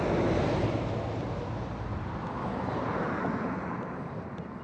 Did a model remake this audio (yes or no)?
no